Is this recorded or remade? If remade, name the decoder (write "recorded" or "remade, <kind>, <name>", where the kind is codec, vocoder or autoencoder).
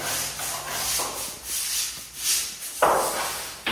recorded